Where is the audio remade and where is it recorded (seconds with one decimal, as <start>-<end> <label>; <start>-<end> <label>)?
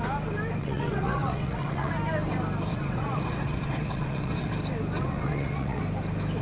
0.0-0.6 recorded; 0.6-1.9 remade; 1.9-2.7 recorded; 2.7-4.5 remade; 4.5-5.0 recorded; 5.0-5.8 remade; 5.8-6.4 recorded